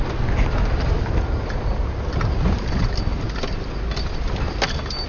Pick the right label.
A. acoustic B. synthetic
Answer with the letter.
A